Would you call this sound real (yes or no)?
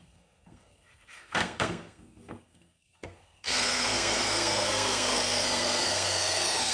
no